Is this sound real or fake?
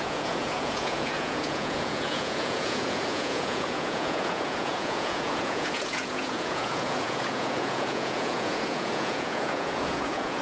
fake